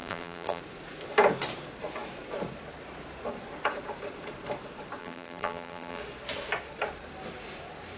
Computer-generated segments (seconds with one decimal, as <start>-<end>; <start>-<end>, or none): 0.0-0.6; 5.0-6.0